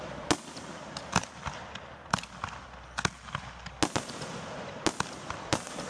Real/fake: real